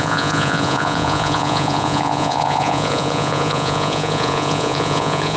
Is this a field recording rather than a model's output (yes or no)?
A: no